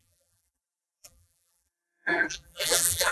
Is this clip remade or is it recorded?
remade